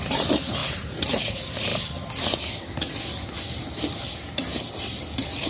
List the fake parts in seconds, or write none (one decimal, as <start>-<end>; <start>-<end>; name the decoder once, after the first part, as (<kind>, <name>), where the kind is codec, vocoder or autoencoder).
0.6-1.2 (vocoder, BigVGAN v2)